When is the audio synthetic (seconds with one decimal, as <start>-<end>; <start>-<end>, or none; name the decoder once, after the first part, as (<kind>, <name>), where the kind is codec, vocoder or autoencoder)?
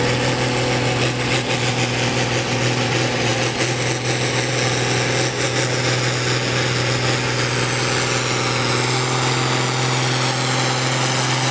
none